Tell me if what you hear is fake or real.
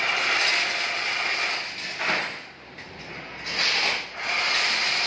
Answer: real